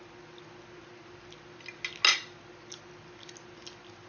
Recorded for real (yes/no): yes